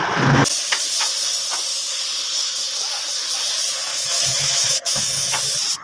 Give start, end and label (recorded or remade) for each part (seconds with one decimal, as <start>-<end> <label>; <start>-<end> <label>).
0.0-3.9 recorded; 3.9-5.3 remade; 5.3-5.8 recorded